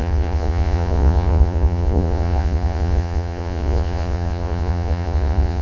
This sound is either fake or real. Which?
fake